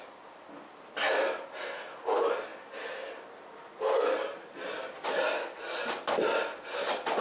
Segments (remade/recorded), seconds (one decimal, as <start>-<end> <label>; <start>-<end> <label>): 0.0-2.5 recorded; 2.5-5.2 remade; 5.2-7.2 recorded